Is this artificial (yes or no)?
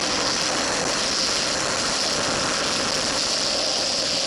no